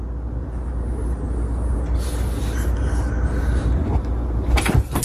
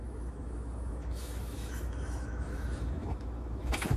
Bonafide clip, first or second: first